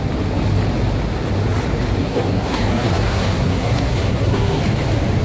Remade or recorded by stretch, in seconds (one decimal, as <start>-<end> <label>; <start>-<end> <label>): 0.0-2.0 recorded; 2.0-4.6 remade; 4.6-5.2 recorded